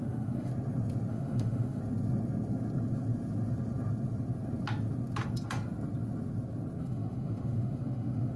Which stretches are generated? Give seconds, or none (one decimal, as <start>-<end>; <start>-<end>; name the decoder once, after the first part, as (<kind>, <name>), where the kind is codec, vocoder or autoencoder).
0.0-0.5 (autoencoder, DAC-VAE); 1.1-1.8; 6.8-8.4